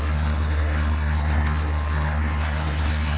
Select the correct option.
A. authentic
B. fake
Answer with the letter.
B